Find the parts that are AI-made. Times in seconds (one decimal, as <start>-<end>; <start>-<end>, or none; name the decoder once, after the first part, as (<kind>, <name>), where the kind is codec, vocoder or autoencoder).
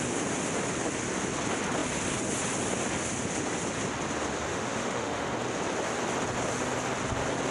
4.5-5.3 (autoencoder, DAC-VAE)